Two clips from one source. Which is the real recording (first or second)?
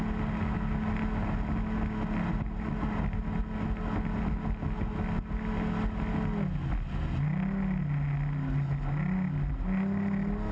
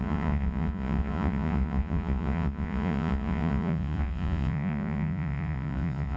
first